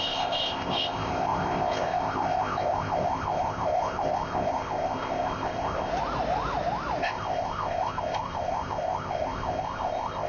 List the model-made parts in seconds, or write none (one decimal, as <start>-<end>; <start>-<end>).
0.0-5.9; 7.0-10.3